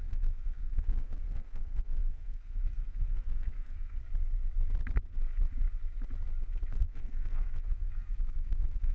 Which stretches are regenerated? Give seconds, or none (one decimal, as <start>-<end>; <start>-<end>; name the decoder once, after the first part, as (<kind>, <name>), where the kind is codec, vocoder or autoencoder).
0.0-4.0 (codec, SNAC); 6.7-8.9